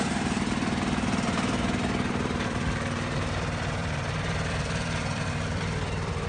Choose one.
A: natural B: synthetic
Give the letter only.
B